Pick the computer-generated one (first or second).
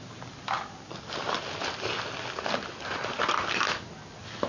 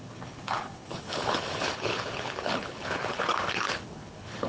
second